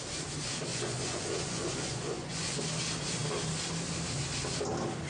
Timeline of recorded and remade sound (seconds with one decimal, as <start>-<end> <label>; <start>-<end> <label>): 0.0-0.7 recorded; 0.7-2.6 remade; 2.6-5.1 recorded